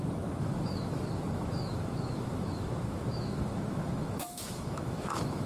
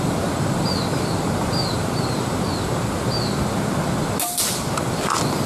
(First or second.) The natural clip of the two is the second